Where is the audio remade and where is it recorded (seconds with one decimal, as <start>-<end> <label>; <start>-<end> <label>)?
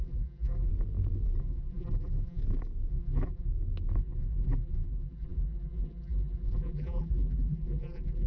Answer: 0.0-0.7 remade; 0.7-1.4 recorded; 1.4-2.4 remade; 2.4-2.9 recorded; 2.9-3.5 remade; 3.5-4.0 recorded; 4.0-8.3 remade